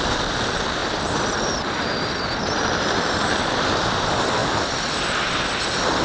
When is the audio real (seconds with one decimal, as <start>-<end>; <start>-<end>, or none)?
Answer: 4.4-6.0